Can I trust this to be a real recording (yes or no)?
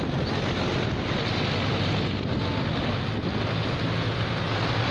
yes